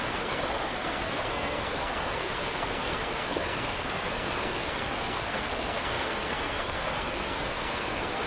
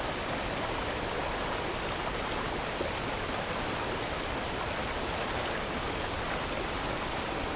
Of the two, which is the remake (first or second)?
first